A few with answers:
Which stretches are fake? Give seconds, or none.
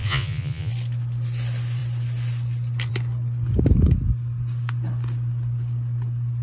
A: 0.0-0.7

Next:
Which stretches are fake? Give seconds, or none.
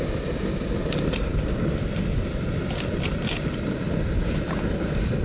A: none